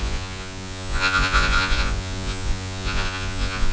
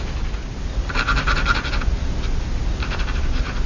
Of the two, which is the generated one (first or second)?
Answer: first